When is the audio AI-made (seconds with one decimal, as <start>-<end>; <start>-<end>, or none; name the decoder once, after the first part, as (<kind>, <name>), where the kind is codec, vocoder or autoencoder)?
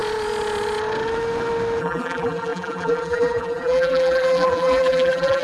1.8-5.4 (vocoder, BigVGAN v2)